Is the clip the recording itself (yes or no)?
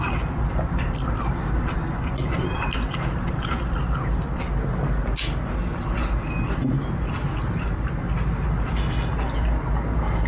yes